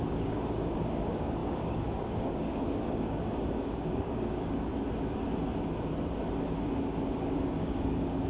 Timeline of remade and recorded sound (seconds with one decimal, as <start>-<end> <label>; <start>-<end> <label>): 0.0-4.7 remade; 4.7-7.5 recorded; 7.5-8.3 remade